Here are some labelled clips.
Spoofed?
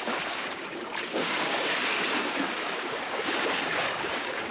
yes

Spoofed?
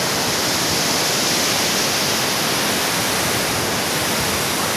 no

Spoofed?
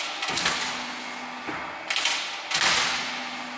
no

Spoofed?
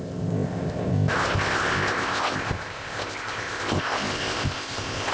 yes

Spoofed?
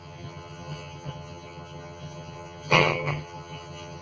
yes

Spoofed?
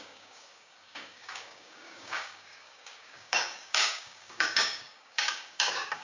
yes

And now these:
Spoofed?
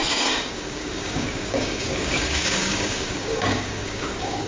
yes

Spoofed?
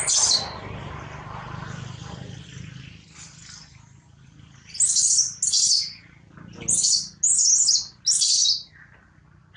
no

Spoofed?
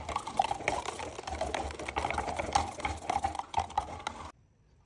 no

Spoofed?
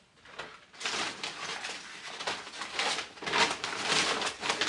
no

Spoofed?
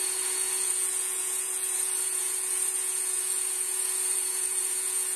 yes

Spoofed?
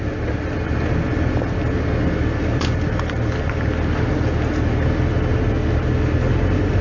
no